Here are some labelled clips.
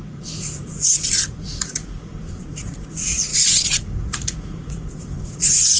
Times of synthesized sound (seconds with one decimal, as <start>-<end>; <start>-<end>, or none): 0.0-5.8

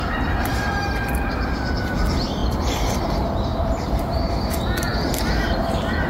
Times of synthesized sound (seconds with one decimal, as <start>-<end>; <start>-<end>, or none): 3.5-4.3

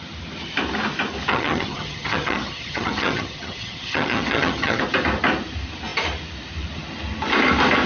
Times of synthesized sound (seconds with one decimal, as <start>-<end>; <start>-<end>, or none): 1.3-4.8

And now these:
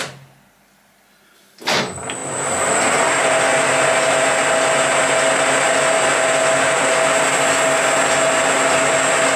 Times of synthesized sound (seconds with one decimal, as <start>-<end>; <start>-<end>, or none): none

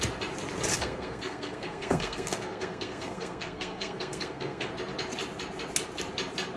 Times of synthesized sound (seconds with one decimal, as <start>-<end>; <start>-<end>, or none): 0.7-4.7